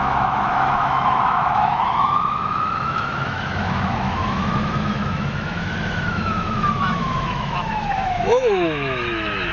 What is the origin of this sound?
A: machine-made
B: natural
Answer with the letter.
A